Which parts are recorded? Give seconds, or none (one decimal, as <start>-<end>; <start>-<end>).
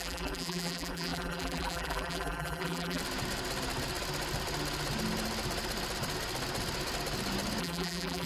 3.0-7.6